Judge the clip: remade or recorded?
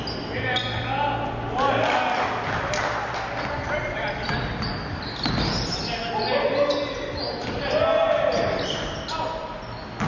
recorded